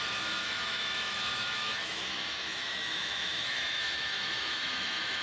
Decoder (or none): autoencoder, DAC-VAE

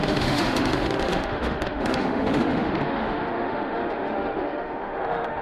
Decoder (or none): autoencoder, DAC-VAE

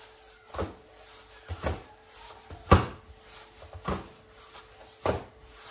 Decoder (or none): none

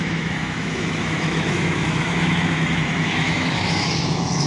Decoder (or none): autoencoder, DAC-VAE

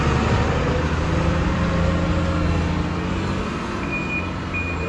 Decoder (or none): none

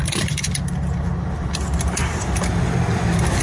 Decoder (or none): none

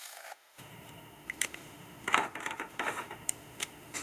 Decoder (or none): autoencoder, DAC-VAE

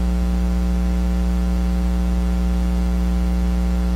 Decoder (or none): none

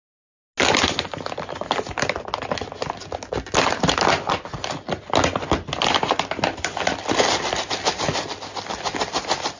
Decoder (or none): none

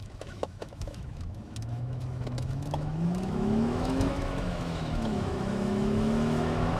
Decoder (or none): autoencoder, DAC-VAE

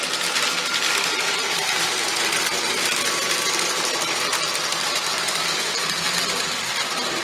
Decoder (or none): none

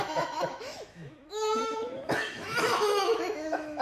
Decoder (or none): autoencoder, DAC-VAE